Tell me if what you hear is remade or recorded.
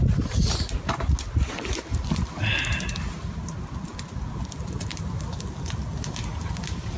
recorded